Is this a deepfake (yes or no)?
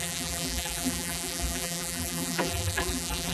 yes